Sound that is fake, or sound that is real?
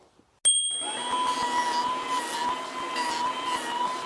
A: real